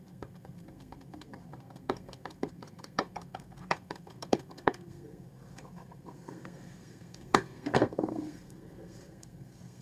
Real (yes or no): no